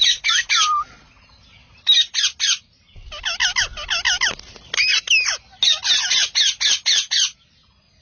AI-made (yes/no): no